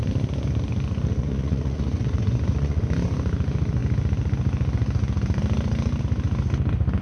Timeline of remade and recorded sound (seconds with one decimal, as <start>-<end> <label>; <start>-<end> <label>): 0.0-1.2 recorded; 1.2-2.8 remade; 2.8-7.0 recorded